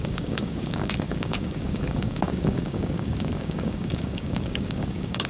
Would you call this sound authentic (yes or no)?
no